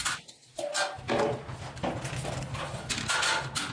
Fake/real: real